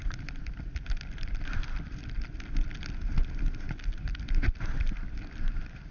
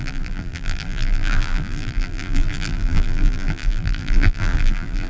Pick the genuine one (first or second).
first